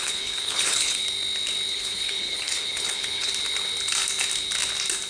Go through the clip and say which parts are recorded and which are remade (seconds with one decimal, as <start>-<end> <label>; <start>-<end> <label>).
0.0-1.0 remade; 1.0-1.7 recorded; 1.7-3.3 remade; 3.3-5.1 recorded